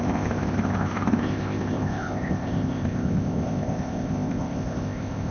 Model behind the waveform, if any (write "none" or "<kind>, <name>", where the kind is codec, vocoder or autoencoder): codec, ZipCodec